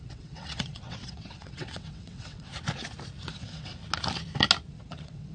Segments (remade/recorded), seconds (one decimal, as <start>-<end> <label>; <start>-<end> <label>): 0.0-2.5 remade; 2.5-3.3 recorded; 3.3-3.8 remade; 3.8-4.7 recorded; 4.7-5.3 remade